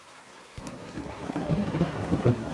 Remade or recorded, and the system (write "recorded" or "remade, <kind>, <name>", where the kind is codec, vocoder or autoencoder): remade, codec, SNAC